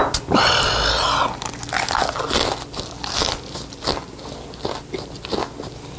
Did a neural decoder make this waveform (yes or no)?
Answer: no